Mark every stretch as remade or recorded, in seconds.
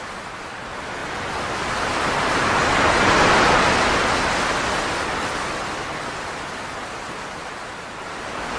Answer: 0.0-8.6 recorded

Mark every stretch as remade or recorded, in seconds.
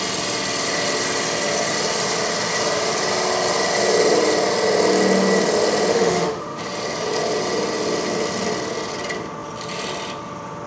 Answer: 0.0-5.9 recorded; 5.9-6.6 remade; 6.6-10.7 recorded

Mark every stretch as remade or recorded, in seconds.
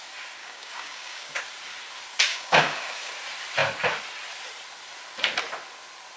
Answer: 0.0-0.4 recorded; 0.4-1.4 remade; 1.4-2.3 recorded; 2.3-3.1 remade; 3.1-6.2 recorded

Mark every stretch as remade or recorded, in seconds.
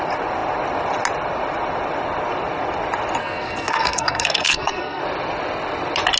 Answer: 0.0-3.2 recorded; 3.2-5.0 remade; 5.0-6.2 recorded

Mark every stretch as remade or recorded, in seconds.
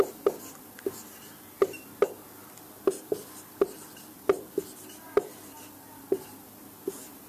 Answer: 0.0-7.3 recorded